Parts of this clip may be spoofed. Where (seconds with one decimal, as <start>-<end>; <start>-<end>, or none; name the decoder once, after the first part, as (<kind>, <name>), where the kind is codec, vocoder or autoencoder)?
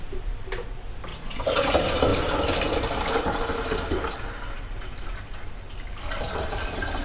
1.1-1.7 (vocoder, Vocos)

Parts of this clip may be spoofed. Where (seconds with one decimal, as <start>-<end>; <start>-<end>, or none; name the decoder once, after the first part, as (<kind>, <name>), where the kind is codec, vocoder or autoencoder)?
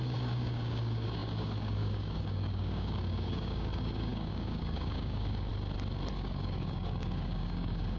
0.0-5.5 (codec, DAC); 6.1-8.0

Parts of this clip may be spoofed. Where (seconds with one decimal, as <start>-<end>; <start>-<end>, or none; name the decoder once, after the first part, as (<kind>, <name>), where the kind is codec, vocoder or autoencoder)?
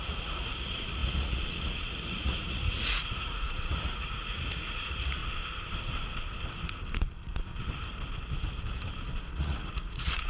0.0-5.2 (vocoder, Vocos); 9.3-10.3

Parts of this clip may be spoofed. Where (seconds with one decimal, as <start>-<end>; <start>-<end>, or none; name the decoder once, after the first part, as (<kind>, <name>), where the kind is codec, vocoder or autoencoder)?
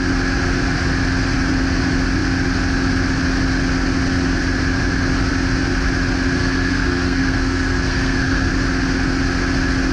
6.4-8.5 (codec, SNAC)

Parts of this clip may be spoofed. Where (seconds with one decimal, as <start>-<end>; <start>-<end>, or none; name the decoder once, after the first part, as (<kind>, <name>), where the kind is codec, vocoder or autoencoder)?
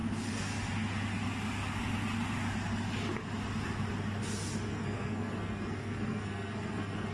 4.7-7.1 (codec, SNAC)